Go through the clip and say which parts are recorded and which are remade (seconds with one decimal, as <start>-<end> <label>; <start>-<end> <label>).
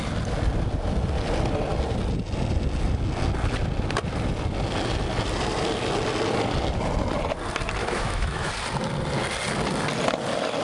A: 0.0-7.8 recorded; 7.8-8.5 remade; 8.5-10.6 recorded